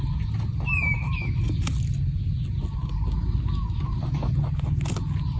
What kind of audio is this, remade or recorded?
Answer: recorded